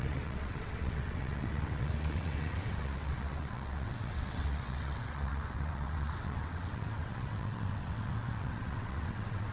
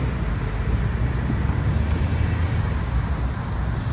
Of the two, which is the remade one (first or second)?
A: first